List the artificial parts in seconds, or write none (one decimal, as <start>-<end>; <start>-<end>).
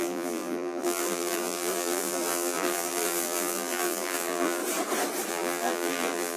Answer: 0.0-4.6; 5.3-6.4